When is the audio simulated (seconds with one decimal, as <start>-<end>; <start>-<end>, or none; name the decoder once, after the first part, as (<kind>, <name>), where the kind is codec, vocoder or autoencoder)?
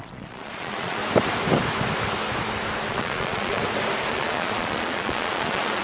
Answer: 0.0-1.0 (vocoder, Vocos); 2.9-3.6; 4.1-5.8